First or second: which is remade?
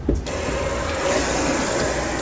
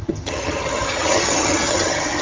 second